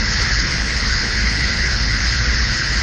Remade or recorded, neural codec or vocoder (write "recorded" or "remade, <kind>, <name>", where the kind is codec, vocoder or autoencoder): remade, codec, HILCodec